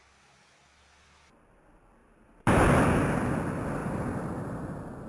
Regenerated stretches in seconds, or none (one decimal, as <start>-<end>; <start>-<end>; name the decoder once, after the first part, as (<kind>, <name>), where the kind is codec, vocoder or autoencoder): 2.0-2.8 (vocoder, BigVGAN v2); 3.8-5.1